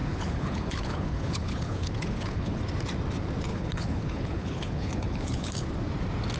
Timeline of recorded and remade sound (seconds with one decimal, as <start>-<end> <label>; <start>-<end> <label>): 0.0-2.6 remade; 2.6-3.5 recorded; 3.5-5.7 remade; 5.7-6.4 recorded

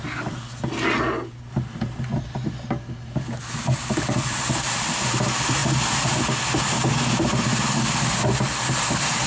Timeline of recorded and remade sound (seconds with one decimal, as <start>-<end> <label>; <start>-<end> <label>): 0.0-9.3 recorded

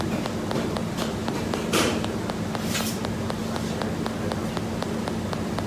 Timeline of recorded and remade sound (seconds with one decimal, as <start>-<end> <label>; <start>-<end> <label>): 0.0-1.2 recorded; 1.2-3.0 remade; 3.0-5.7 recorded

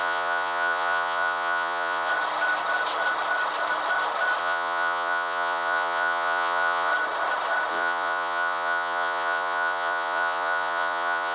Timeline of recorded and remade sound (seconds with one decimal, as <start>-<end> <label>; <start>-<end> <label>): 0.0-2.1 remade; 2.1-4.4 recorded; 4.4-6.9 remade; 6.9-7.7 recorded; 7.7-11.3 remade